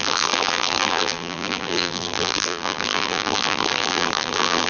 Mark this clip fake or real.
fake